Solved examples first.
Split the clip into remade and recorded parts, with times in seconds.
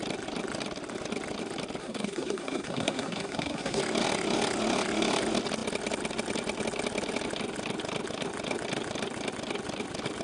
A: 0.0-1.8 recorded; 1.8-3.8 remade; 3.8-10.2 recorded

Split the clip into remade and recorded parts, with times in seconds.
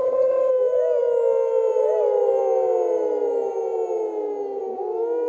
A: 0.0-0.5 remade; 0.5-5.3 recorded